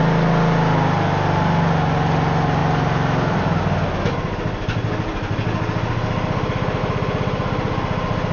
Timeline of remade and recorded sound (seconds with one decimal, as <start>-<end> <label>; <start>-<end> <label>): 0.0-8.3 recorded